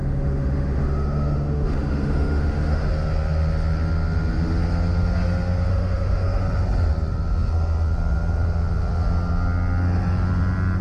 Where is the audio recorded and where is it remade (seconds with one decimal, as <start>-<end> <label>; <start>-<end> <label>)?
0.0-2.9 remade; 2.9-5.7 recorded; 5.7-6.4 remade; 6.4-10.8 recorded